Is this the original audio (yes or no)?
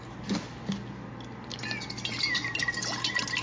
yes